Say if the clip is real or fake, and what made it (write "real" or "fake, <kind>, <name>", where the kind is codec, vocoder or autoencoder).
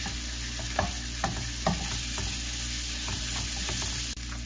real